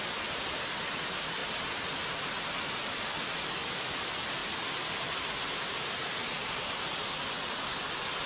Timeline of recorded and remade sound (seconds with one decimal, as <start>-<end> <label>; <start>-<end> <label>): 0.0-8.3 recorded